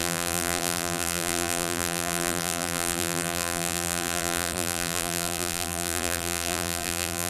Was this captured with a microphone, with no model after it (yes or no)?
no